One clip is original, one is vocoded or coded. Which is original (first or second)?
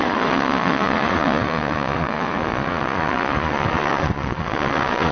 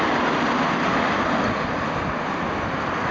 second